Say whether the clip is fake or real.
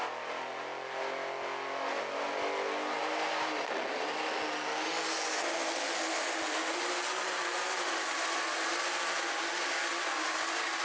real